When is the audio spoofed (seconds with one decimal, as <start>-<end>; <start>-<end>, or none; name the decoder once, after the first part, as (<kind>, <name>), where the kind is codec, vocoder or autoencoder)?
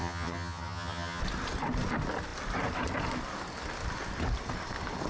0.0-1.2 (vocoder, HiFi-GAN)